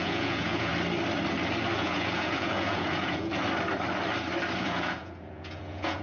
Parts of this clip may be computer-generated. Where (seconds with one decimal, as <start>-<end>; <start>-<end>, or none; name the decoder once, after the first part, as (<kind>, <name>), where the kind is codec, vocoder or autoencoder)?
0.0-0.7 (vocoder, Vocos); 1.7-3.3; 4.6-6.0

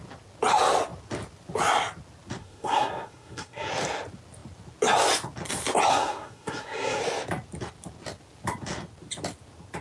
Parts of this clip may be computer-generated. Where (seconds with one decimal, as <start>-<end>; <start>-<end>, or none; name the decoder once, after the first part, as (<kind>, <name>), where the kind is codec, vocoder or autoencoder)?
2.4-3.7 (codec, SNAC); 5.9-7.0

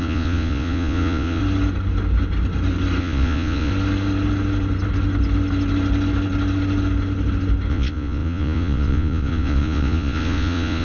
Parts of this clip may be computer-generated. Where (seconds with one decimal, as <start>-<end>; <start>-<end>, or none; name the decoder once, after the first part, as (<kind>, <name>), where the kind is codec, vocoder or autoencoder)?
0.0-1.4 (vocoder, Vocos); 3.0-3.7; 7.7-10.8

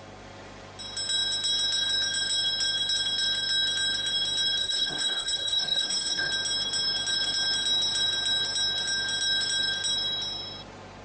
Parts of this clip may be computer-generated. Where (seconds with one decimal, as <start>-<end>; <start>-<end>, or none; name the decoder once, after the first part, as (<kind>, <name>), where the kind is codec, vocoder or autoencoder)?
4.6-6.3 (codec, SNAC)

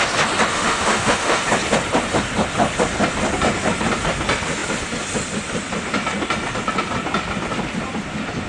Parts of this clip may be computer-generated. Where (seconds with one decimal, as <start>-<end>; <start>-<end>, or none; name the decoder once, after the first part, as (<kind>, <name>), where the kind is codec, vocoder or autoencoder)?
0.5-1.4 (autoencoder, DAC-VAE)